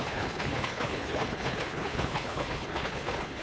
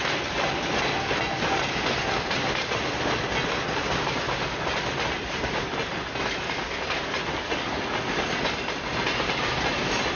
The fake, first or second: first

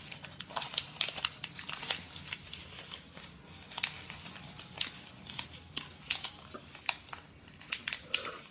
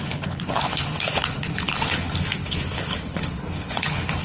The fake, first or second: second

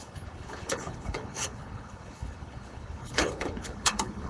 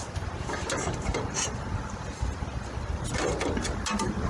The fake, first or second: first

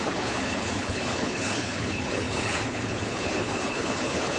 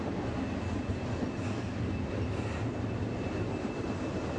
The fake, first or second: first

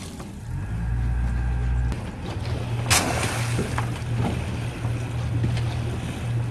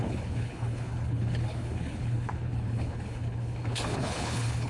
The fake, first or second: second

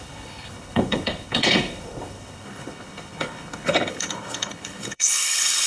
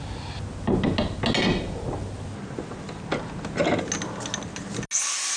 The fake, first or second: first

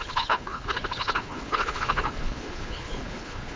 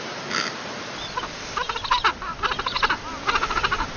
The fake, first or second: first